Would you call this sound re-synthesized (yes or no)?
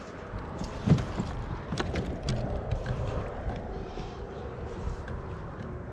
yes